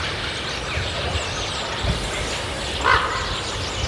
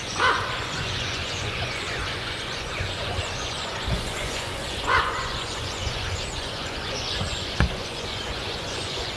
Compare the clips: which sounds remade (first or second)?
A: second